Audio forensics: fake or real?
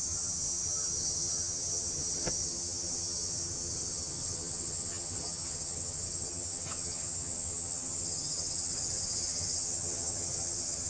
fake